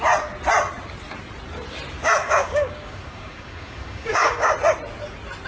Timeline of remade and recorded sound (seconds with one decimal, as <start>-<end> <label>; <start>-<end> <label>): 0.0-2.2 recorded; 2.2-4.5 remade; 4.5-5.5 recorded